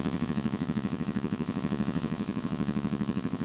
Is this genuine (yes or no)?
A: no